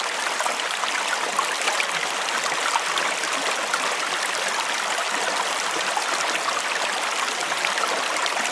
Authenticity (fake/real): real